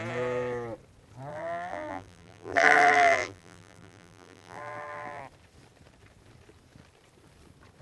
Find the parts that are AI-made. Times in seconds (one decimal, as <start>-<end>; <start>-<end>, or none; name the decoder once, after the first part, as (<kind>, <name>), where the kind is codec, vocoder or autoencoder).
1.3-5.2 (vocoder, BigVGAN v2)